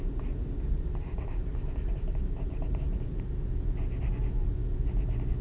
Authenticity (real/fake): real